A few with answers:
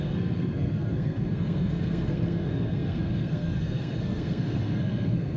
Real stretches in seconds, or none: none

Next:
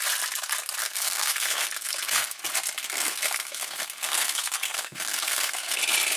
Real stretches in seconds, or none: 0.0-0.8; 2.4-2.8; 5.8-6.2

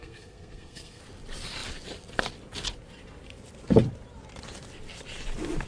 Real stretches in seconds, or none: 1.0-5.7